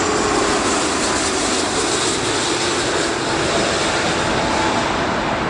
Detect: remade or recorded recorded